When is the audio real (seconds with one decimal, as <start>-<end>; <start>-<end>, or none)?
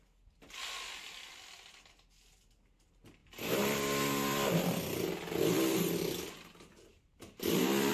0.0-3.2; 6.3-6.9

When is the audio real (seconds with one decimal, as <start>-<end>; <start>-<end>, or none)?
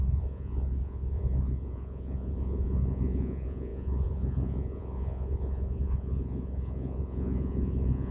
none